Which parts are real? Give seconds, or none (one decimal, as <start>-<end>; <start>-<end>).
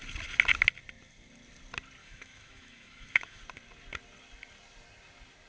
0.0-2.0; 3.4-5.5